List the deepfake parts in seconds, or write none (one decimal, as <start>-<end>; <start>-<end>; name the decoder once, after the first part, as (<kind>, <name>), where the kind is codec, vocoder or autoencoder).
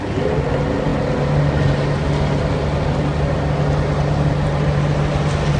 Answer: none